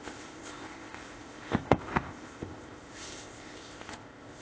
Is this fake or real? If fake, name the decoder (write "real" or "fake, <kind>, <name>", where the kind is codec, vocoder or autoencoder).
fake, codec, ZipCodec